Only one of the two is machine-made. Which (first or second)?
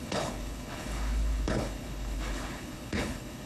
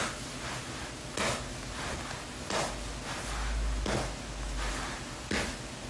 first